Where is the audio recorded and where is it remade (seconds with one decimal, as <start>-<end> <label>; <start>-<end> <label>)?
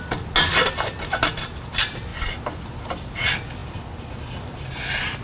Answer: 0.0-5.2 recorded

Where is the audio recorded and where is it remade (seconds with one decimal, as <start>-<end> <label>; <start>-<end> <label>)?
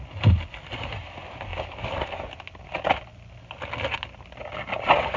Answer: 0.0-5.2 recorded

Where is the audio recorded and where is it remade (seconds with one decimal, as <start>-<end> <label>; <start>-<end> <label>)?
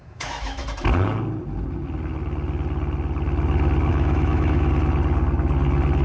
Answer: 0.0-0.6 remade; 0.6-3.9 recorded; 3.9-4.7 remade; 4.7-6.0 recorded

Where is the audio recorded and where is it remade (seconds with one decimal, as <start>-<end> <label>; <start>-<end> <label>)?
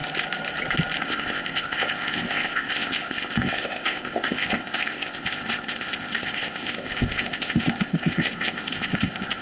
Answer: 0.0-1.0 recorded; 1.0-9.4 remade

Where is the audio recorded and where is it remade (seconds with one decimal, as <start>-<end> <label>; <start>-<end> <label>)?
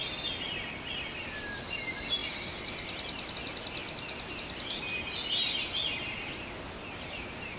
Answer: 0.0-7.6 recorded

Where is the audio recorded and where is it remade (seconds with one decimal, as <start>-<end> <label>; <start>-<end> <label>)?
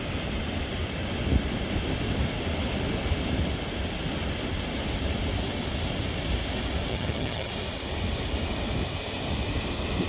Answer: 0.0-6.9 recorded; 6.9-7.5 remade; 7.5-10.1 recorded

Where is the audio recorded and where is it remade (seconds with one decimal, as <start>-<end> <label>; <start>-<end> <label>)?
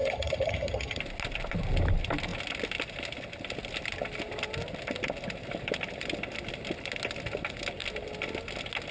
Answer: 0.0-1.0 remade; 1.0-8.9 recorded